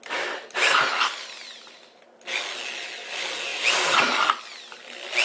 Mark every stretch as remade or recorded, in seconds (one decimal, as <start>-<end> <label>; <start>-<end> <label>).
0.0-5.2 recorded